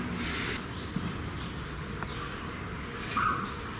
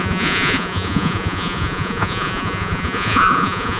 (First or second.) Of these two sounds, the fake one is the second